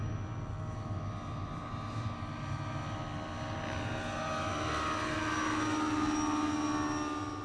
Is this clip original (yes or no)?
yes